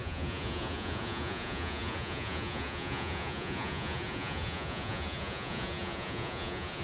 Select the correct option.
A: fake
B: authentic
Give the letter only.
A